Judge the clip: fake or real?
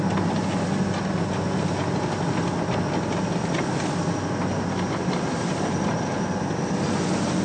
real